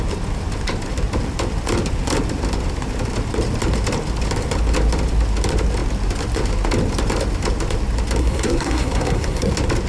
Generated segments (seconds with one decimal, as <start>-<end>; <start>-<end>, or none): 8.2-9.5